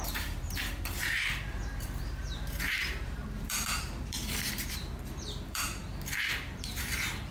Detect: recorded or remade remade